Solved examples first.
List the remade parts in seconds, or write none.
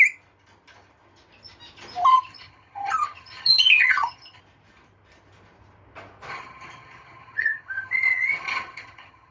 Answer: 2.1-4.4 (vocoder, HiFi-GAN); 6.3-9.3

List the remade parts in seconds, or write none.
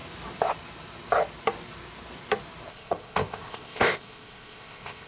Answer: 2.7-5.1 (codec, ZipCodec)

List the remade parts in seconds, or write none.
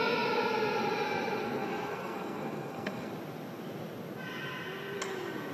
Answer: 1.4-3.1 (codec, SNAC)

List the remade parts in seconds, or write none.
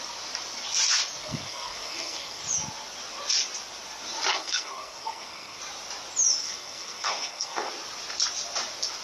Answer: 1.2-2.4 (codec, SNAC); 4.3-5.6; 6.4-7.7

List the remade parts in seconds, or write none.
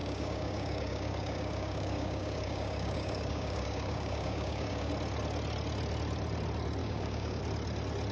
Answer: 0.0-4.9 (codec, DAC); 6.8-7.4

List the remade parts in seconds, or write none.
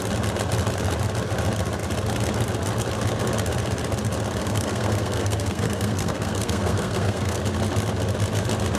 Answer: 4.4-7.4 (codec, SNAC)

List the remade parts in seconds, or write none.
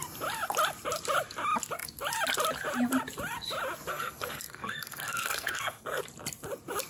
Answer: 3.9-6.0 (codec, SNAC)